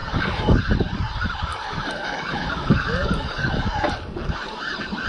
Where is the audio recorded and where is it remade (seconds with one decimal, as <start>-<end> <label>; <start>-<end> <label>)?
0.0-0.6 remade; 0.6-1.5 recorded; 1.5-4.6 remade; 4.6-5.1 recorded